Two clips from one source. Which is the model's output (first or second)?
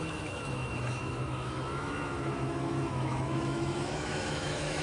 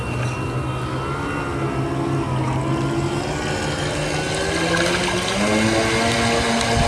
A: first